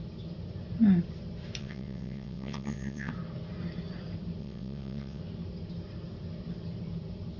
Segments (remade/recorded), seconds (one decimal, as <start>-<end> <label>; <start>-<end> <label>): 0.0-1.6 recorded; 1.6-3.1 remade; 3.1-4.4 recorded; 4.4-5.2 remade; 5.2-7.4 recorded